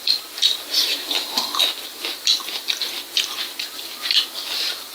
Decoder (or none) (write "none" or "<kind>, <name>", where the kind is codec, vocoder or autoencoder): none